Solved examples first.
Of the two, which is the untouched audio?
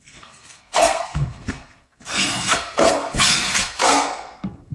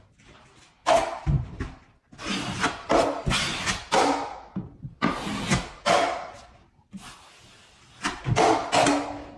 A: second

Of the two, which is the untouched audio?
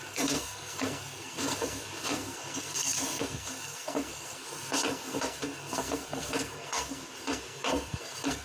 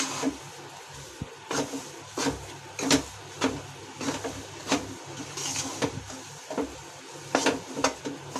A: second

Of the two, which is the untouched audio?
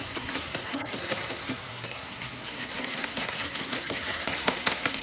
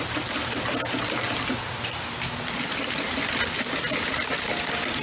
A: second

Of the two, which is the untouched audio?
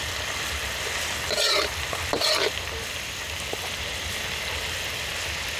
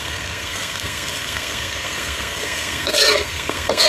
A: first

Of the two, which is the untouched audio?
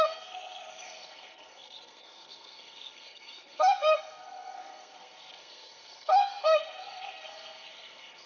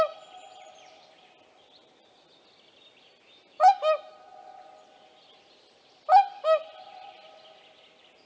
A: second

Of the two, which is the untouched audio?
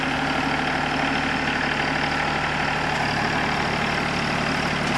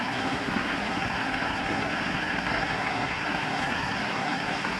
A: first